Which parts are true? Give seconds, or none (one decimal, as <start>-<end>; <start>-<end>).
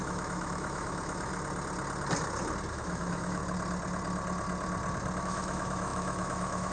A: 1.3-2.7; 3.4-5.2